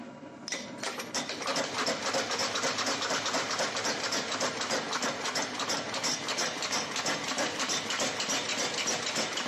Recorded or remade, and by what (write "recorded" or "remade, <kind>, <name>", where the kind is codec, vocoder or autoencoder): recorded